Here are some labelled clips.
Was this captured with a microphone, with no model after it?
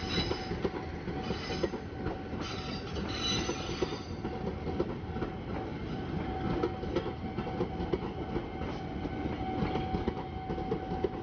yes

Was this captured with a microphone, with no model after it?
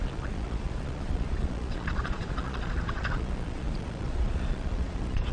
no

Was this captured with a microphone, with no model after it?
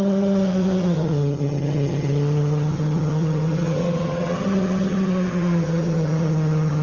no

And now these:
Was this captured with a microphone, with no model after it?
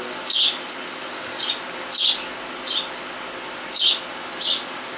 yes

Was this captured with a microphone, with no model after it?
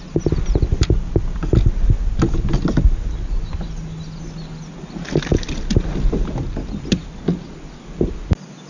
yes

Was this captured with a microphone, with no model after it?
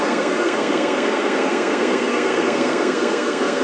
no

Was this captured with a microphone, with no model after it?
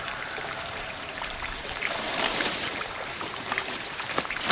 no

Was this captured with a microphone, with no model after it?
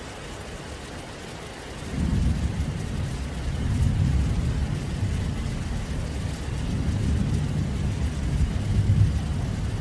yes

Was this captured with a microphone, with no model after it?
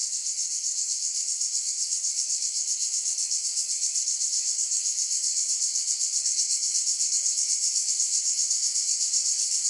no